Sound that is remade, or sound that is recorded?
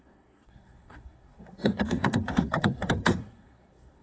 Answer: remade